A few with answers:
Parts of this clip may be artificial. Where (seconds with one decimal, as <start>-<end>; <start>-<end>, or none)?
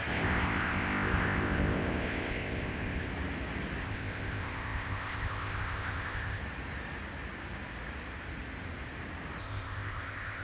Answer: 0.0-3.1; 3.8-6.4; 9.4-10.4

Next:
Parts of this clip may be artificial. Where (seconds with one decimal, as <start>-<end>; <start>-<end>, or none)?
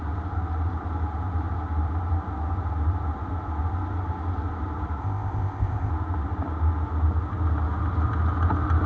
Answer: 5.0-5.9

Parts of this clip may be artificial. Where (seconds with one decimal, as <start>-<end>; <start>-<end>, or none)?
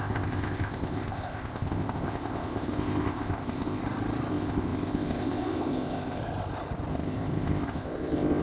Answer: 0.0-3.8; 4.3-6.2; 6.9-8.4